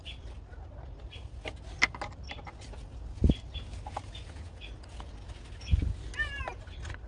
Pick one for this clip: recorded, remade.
recorded